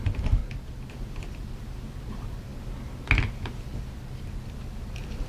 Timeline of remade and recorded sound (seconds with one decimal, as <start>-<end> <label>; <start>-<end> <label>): 0.0-0.4 remade; 0.4-0.9 recorded; 0.9-2.5 remade; 2.5-4.8 recorded; 4.8-5.3 remade